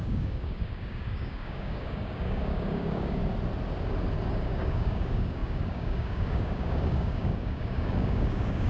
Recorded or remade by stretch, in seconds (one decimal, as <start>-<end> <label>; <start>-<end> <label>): 0.0-3.2 remade; 3.2-4.3 recorded; 4.3-8.7 remade